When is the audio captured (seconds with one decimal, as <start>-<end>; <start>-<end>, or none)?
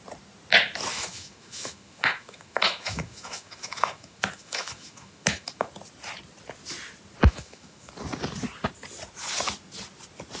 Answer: 0.0-0.9; 5.7-7.2; 7.9-10.4